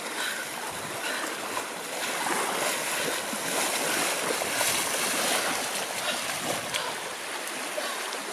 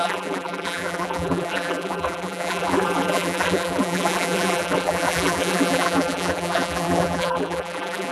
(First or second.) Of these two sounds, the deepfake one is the second